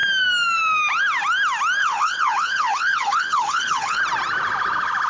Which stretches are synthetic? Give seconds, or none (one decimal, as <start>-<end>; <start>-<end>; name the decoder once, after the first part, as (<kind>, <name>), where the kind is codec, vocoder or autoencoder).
1.8-4.0 (codec, HILCodec)